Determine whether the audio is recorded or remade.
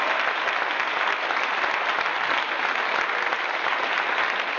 recorded